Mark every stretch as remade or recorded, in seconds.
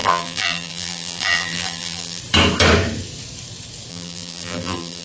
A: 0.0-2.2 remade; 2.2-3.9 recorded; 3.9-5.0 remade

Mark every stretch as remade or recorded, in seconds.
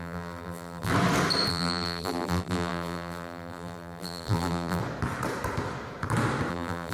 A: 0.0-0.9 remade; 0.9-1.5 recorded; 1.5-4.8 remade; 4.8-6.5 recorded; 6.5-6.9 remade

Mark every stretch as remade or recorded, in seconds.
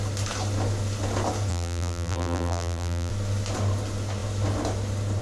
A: 0.0-1.5 recorded; 1.5-3.1 remade; 3.1-5.2 recorded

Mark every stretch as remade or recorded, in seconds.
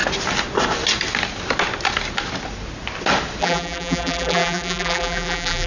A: 0.0-3.4 recorded; 3.4-5.7 remade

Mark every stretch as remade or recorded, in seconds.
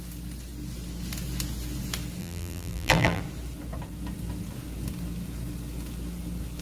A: 0.0-2.2 recorded; 2.2-3.2 remade; 3.2-6.6 recorded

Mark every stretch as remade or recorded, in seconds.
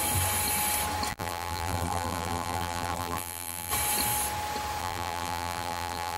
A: 0.0-1.1 recorded; 1.1-3.7 remade; 3.7-4.8 recorded; 4.8-6.2 remade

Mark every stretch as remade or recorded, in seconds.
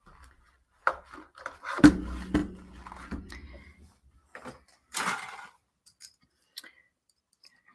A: 0.0-2.4 remade; 2.4-3.3 recorded; 3.3-7.7 remade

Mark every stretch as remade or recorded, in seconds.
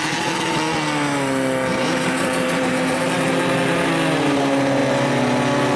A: 0.0-1.7 recorded; 1.7-3.0 remade; 3.0-5.8 recorded